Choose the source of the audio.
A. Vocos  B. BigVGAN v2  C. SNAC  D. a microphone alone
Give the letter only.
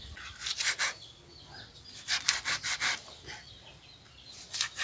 D